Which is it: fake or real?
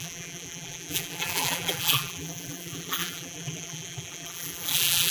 fake